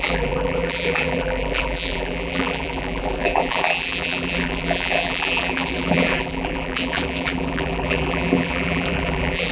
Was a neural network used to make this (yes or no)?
yes